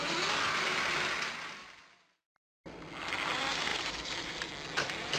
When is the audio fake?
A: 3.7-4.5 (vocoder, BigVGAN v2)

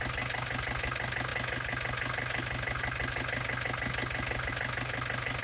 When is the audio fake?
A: none

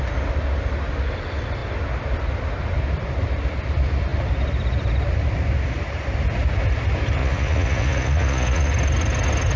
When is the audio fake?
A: 7.2-8.7 (vocoder, Vocos)

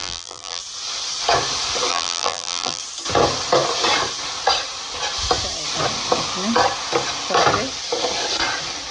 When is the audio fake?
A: 0.0-0.6 (vocoder, BigVGAN v2); 1.9-2.8